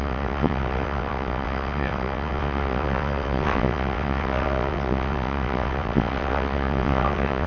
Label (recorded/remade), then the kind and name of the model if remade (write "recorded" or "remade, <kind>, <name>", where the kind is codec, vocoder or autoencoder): remade, vocoder, WaveNeXt